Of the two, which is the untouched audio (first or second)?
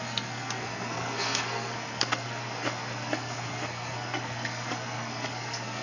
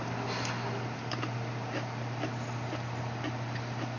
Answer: second